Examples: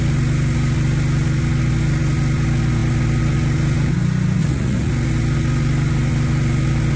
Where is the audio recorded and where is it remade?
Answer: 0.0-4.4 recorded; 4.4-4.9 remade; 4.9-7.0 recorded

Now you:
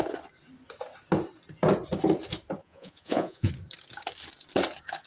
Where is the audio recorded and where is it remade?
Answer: 0.0-2.6 recorded; 2.6-3.5 remade; 3.5-5.1 recorded

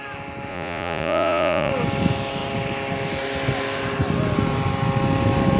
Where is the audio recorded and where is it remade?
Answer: 0.0-0.5 recorded; 0.5-1.7 remade; 1.7-5.6 recorded

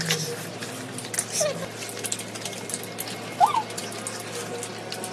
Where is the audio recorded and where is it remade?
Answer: 0.0-5.1 recorded